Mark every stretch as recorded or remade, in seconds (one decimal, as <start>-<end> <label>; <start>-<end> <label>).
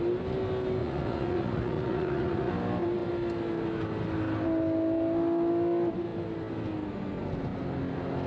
0.0-0.8 recorded; 0.8-2.5 remade; 2.5-8.3 recorded